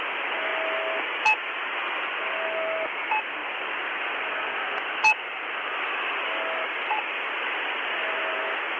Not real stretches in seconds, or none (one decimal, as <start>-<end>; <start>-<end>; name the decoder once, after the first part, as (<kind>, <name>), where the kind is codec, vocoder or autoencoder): none